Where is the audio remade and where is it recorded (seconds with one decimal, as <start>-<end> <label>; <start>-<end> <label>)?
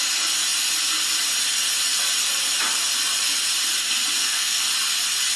0.0-4.2 recorded; 4.2-4.7 remade; 4.7-5.4 recorded